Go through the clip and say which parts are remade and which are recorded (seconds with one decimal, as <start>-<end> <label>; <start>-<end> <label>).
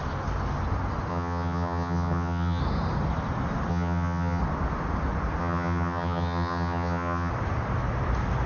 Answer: 0.0-1.1 recorded; 1.1-2.6 remade; 2.6-3.7 recorded; 3.7-4.4 remade; 4.4-5.4 recorded; 5.4-7.3 remade; 7.3-8.5 recorded